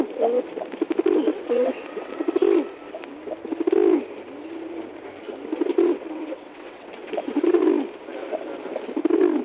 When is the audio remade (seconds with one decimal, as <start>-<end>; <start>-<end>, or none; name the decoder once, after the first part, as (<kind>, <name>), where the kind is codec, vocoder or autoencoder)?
1.3-2.1 (vocoder, WaveNeXt); 5.7-7.6